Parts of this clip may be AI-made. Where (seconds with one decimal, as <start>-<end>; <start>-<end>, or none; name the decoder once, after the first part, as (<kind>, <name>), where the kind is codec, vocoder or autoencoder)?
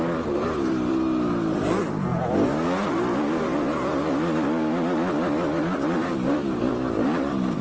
none